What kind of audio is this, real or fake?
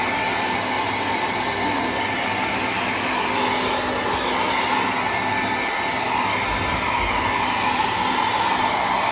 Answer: real